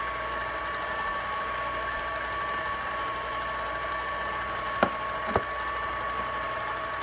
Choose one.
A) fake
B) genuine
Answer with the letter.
B